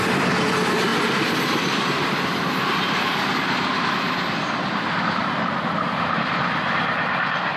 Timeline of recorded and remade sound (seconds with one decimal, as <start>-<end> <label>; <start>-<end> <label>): 0.0-7.6 recorded